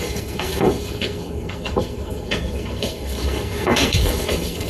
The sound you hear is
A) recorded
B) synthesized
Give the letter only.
B